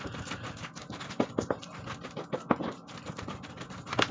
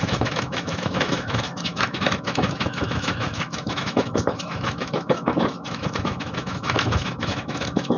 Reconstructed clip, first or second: second